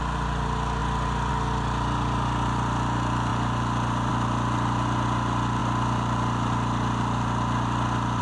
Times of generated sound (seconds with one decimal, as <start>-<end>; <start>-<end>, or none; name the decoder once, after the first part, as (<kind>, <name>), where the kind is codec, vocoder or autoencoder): none